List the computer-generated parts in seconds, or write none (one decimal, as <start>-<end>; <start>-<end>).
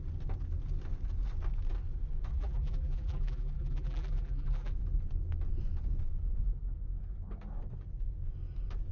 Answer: 2.3-4.7